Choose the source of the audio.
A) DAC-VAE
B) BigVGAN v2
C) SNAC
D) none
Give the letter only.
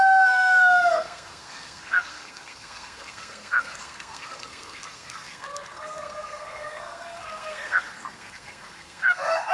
C